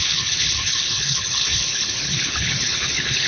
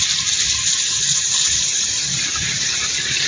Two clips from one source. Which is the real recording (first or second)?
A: second